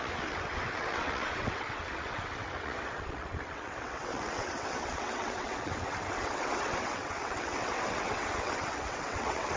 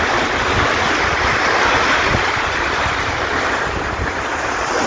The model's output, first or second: first